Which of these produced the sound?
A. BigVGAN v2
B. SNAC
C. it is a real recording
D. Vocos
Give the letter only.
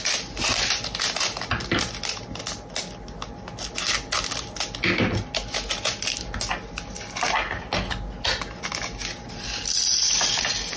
C